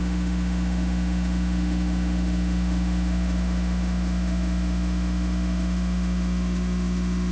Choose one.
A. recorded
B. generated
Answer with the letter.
B